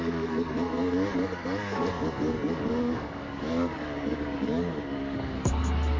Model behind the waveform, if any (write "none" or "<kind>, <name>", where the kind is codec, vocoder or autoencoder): codec, DAC